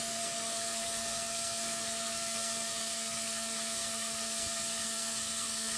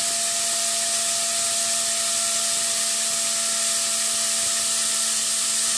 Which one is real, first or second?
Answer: second